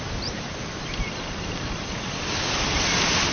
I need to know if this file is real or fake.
real